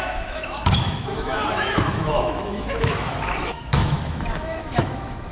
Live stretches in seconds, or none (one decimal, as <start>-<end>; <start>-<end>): none